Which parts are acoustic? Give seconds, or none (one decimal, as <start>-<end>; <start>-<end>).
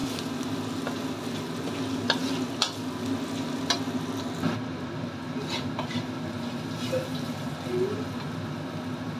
0.0-9.2